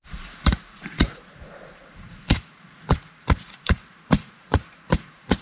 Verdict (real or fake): fake